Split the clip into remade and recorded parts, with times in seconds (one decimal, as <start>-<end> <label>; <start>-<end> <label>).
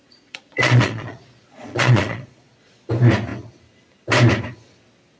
0.0-2.9 remade; 2.9-5.2 recorded